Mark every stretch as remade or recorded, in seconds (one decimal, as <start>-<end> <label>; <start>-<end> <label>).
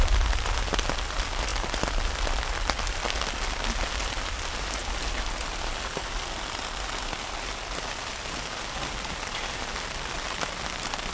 0.0-11.1 recorded